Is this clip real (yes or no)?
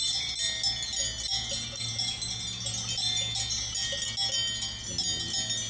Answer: yes